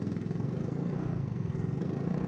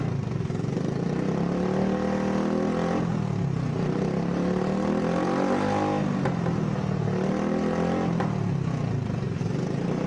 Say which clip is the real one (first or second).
second